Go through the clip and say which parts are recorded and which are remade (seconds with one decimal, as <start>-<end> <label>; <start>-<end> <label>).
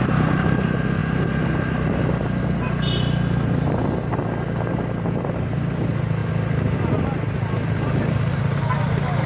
0.0-9.3 recorded